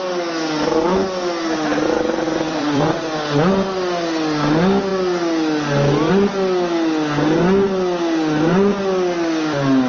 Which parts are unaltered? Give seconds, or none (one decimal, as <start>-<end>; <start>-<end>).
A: 0.0-1.7; 2.9-9.9